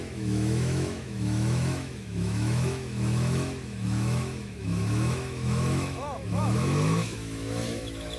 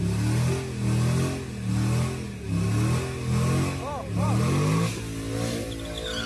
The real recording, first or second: second